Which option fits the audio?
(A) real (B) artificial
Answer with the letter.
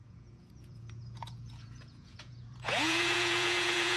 B